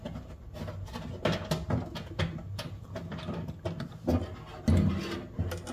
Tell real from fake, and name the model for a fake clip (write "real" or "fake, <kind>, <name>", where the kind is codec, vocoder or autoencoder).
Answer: real